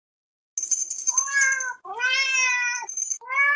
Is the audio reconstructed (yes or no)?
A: no